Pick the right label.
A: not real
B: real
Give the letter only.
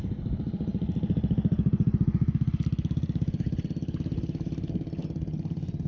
B